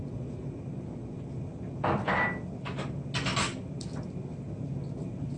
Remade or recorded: recorded